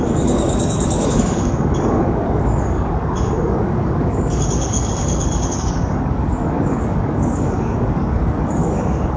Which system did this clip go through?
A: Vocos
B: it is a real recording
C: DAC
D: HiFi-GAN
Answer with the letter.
C